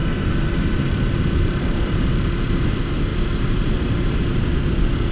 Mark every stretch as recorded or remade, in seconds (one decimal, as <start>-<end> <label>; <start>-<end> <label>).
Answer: 0.0-2.3 remade; 2.3-3.1 recorded; 3.1-4.4 remade; 4.4-5.1 recorded